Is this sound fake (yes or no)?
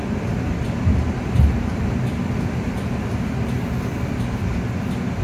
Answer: no